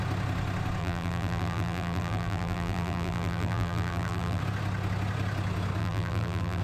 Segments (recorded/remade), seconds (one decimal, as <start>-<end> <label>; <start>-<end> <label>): 0.0-0.8 recorded; 0.8-4.4 remade; 4.4-5.8 recorded; 5.8-6.6 remade